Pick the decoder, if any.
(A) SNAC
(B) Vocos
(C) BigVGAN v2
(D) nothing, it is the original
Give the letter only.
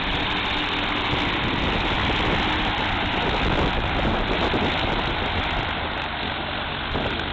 D